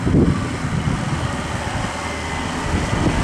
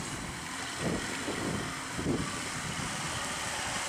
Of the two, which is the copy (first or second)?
second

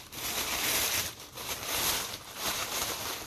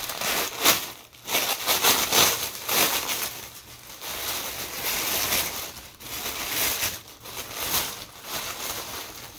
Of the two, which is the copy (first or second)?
first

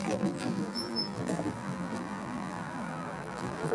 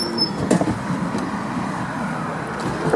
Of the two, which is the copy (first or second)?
first